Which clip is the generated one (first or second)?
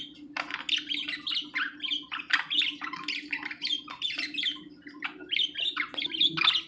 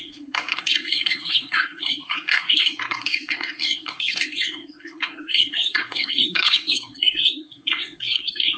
second